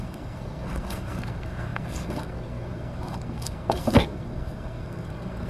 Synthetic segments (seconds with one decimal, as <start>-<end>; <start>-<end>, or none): 0.0-5.5